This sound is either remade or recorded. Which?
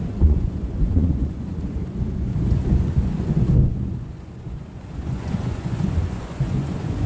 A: remade